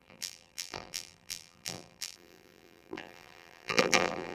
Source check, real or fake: fake